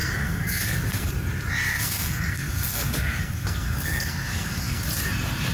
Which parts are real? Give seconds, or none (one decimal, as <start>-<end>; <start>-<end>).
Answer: 1.1-1.7; 4.8-5.5